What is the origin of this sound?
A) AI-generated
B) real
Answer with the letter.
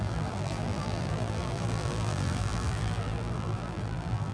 A